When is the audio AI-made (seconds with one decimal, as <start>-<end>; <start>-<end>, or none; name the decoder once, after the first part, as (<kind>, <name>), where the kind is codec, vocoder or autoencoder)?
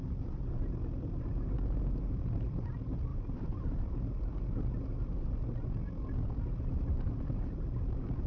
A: 3.1-3.9 (vocoder, BigVGAN v2)